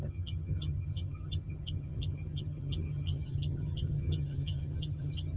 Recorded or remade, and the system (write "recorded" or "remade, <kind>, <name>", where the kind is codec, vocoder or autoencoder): remade, vocoder, HiFi-GAN